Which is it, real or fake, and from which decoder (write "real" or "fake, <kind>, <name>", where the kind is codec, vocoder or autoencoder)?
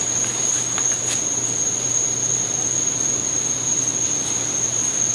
real